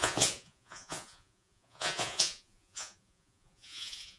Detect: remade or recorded remade